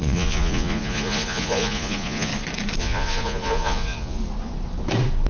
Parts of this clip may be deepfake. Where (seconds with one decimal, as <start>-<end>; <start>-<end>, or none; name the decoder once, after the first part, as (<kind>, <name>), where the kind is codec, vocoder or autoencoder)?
0.0-2.3 (vocoder, Vocos); 2.8-4.2